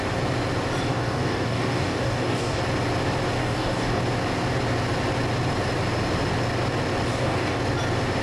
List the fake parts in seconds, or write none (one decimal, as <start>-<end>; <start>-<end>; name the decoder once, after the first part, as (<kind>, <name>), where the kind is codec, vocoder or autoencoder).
0.9-2.6 (codec, DAC); 3.4-4.0; 7.1-7.6